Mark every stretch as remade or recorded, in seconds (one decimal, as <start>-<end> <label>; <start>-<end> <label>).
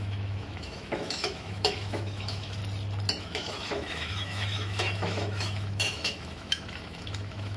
0.0-2.6 remade; 2.6-3.2 recorded; 3.2-7.6 remade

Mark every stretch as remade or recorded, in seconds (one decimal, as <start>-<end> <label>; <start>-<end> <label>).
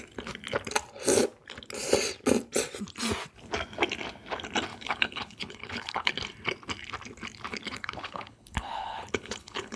0.0-4.7 recorded; 4.7-6.1 remade; 6.1-7.5 recorded; 7.5-9.8 remade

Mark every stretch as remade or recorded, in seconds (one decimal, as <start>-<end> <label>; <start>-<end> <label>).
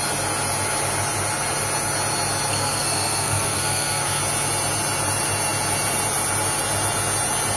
0.0-2.5 recorded; 2.5-4.2 remade; 4.2-7.6 recorded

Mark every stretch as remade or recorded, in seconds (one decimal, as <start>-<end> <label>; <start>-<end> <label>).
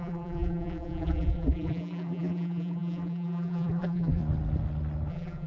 0.0-4.2 remade; 4.2-5.1 recorded; 5.1-5.5 remade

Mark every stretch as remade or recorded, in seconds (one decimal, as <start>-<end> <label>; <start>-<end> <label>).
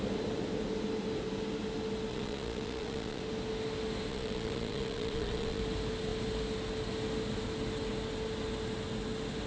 0.0-2.1 recorded; 2.1-3.2 remade; 3.2-4.1 recorded; 4.1-5.6 remade; 5.6-9.5 recorded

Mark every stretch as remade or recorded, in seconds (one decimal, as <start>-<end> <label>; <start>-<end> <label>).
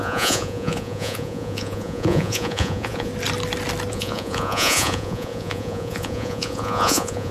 0.0-3.1 remade; 3.1-3.9 recorded; 3.9-7.3 remade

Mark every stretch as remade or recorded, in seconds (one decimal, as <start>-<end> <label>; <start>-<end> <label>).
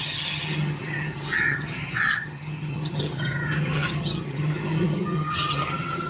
0.0-6.1 remade